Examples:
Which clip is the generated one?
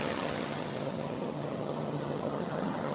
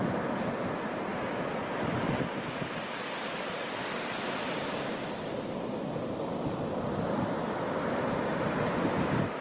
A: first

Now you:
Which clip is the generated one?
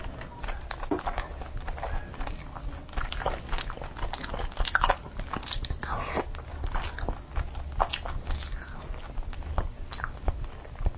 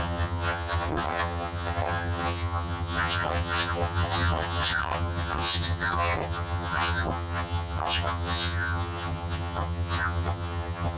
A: second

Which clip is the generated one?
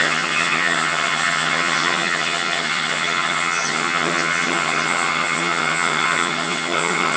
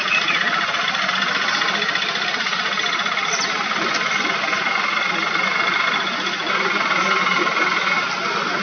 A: first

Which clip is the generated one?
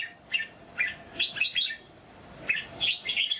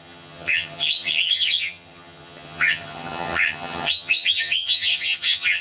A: second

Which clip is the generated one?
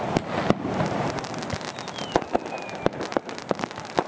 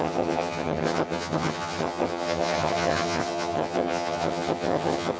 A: second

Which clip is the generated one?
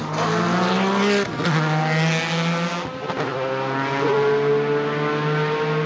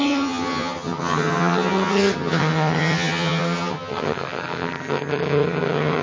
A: second